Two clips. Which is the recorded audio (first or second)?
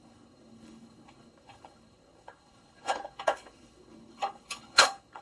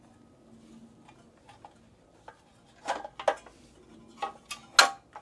second